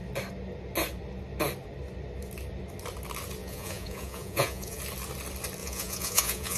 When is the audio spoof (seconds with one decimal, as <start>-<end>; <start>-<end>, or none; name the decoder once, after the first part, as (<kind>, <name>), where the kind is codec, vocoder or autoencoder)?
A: 3.4-4.8 (vocoder, Vocos); 5.6-6.6